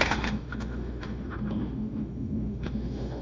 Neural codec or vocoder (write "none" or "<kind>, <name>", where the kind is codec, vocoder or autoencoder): autoencoder, DAC-VAE